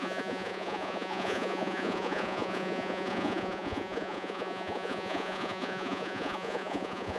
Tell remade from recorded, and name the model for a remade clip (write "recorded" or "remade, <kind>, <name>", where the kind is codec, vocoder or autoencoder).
remade, vocoder, Vocos